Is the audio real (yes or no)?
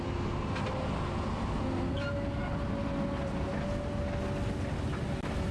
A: yes